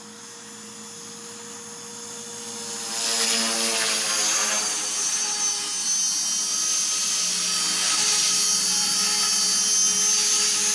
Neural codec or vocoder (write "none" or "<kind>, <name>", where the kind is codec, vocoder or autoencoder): none